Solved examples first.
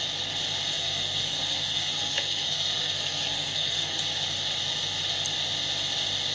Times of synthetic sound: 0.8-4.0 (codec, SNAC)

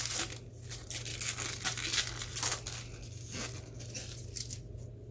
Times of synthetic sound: none

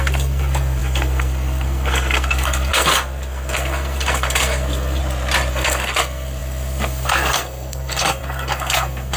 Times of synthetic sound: 0.0-5.0 (codec, SNAC); 5.5-9.2

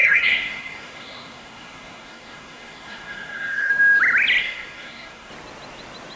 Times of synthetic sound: 0.0-3.7 (codec, SNAC); 4.4-5.3

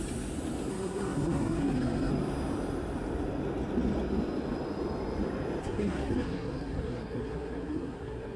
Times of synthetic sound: 0.7-2.1 (codec, SNAC); 5.6-8.4